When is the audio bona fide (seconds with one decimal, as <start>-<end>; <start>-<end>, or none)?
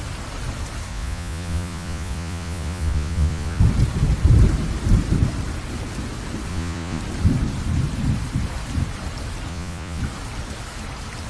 0.0-0.9; 3.6-6.5; 7.0-9.5; 10.0-11.3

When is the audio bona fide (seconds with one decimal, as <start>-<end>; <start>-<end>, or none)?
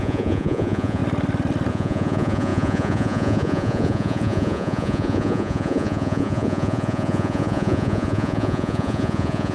1.0-1.7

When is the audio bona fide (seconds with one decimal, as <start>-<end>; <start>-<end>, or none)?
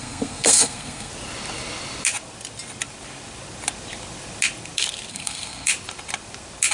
1.1-5.1; 5.7-6.7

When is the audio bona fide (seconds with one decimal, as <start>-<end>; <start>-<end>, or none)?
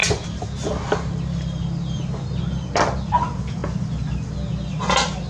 0.0-5.3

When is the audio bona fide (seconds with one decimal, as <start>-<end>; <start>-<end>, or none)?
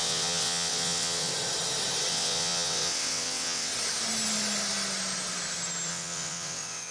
1.3-2.1; 3.7-5.9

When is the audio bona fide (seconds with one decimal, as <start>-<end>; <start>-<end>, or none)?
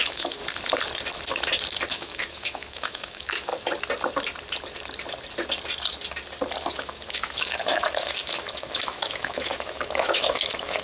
0.4-1.9; 3.5-6.8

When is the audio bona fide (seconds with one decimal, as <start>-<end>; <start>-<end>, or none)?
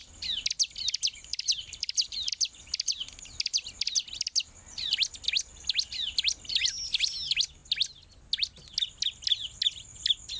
0.0-1.3; 2.3-10.4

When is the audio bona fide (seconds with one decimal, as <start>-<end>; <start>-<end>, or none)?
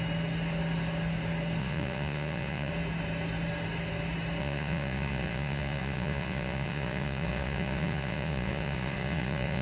0.0-1.6; 2.7-4.4